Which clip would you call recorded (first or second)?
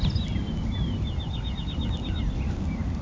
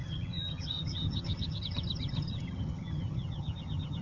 first